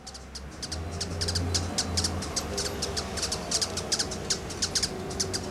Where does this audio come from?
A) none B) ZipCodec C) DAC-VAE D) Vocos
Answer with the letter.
A